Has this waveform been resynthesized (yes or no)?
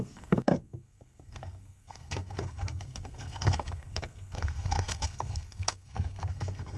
yes